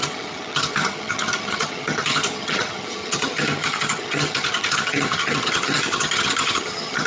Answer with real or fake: fake